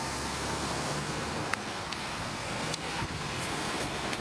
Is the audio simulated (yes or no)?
yes